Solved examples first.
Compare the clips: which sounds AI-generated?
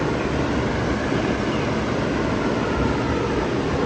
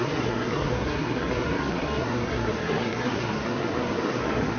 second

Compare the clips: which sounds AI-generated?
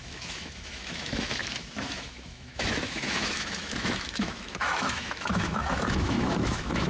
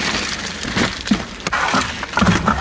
first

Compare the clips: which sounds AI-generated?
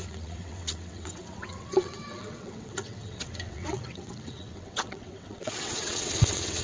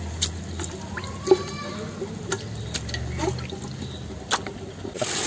first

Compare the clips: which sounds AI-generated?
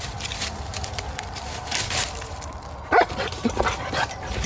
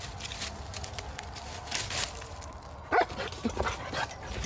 first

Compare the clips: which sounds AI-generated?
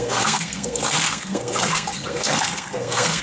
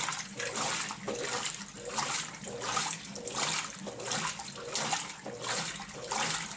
first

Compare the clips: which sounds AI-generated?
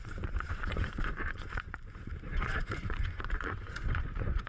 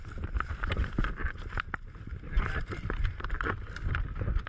first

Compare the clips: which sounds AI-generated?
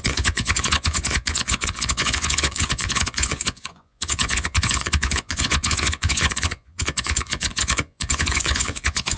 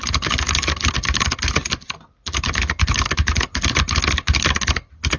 first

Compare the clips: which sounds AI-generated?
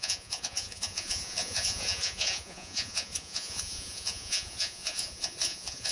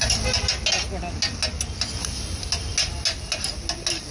first